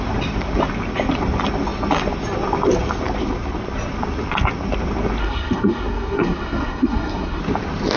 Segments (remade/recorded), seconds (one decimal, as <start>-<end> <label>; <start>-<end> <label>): 0.0-5.2 recorded; 5.2-7.4 remade; 7.4-8.0 recorded